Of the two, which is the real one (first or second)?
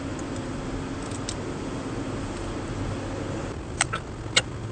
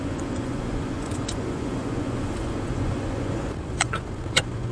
first